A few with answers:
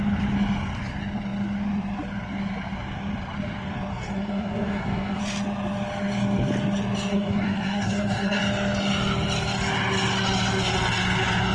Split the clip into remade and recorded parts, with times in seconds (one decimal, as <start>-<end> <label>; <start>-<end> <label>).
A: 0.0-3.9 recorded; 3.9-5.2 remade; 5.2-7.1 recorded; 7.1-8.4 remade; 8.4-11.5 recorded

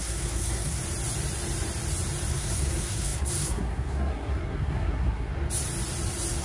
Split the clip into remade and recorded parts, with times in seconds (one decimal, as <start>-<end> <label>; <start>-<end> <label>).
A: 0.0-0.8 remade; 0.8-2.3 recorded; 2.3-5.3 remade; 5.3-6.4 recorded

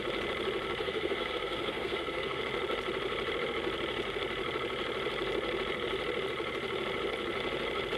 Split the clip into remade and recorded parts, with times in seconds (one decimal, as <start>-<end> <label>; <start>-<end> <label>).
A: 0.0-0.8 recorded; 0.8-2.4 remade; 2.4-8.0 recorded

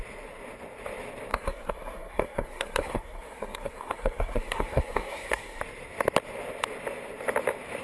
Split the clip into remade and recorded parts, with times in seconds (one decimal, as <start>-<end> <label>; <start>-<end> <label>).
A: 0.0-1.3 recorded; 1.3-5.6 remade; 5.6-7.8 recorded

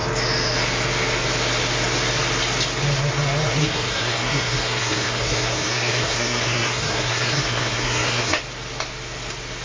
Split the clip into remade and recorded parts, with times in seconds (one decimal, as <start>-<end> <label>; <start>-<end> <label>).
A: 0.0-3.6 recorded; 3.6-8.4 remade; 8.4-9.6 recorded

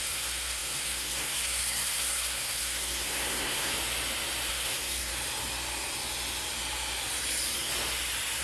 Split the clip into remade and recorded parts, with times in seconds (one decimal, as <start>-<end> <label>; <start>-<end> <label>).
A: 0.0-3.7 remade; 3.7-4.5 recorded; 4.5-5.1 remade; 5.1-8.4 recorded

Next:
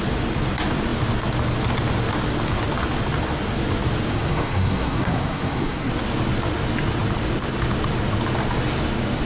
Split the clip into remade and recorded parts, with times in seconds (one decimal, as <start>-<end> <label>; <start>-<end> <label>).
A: 0.0-4.1 recorded; 4.1-5.9 remade; 5.9-9.2 recorded